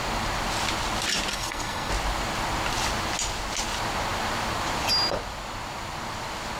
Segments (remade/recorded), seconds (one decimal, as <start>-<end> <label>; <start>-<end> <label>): 0.0-1.3 recorded; 1.3-1.9 remade; 1.9-6.6 recorded